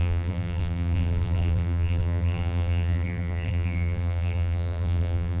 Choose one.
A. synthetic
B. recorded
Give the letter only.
A